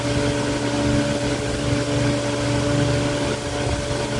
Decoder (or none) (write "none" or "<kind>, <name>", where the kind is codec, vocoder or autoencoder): none